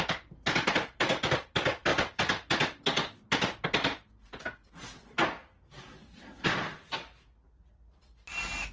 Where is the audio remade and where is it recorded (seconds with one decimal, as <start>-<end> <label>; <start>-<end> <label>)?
0.0-1.9 recorded; 1.9-2.5 remade; 2.5-8.7 recorded